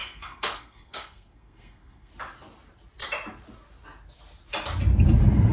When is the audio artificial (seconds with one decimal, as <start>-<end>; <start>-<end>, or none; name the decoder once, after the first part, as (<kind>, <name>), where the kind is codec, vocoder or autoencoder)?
0.0-2.1 (codec, SNAC)